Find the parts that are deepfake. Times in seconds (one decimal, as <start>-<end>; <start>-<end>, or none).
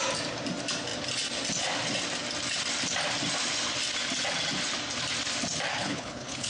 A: 5.7-6.5